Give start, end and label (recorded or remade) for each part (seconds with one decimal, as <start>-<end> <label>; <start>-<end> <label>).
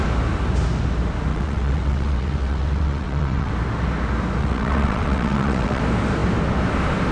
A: 0.0-1.3 recorded; 1.3-3.5 remade; 3.5-4.4 recorded; 4.4-5.8 remade; 5.8-7.1 recorded